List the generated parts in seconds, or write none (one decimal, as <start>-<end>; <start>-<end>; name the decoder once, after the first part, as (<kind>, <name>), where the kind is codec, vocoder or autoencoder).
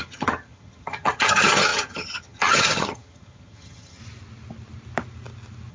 0.0-4.0 (vocoder, HiFi-GAN)